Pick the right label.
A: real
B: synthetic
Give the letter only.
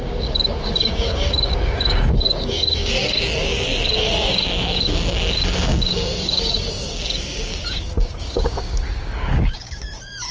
B